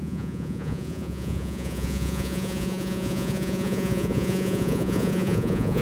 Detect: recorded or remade remade